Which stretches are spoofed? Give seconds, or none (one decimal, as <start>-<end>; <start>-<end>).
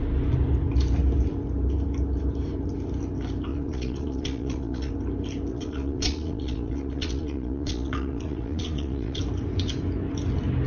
3.5-4.9; 5.5-9.2